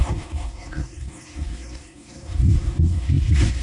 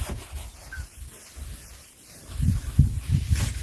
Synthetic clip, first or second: first